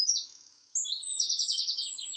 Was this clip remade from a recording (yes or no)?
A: yes